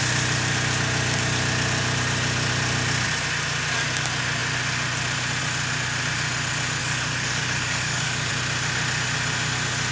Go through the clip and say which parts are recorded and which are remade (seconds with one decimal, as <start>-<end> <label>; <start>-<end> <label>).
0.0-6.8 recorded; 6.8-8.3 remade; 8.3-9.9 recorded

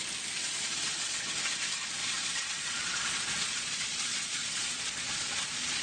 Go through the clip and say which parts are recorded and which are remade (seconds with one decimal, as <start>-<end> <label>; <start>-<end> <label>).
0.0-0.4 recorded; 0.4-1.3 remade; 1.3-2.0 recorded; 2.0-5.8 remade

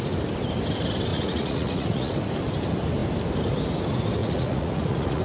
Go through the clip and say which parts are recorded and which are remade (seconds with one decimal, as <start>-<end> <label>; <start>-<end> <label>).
0.0-1.1 recorded; 1.1-2.1 remade; 2.1-4.2 recorded; 4.2-5.2 remade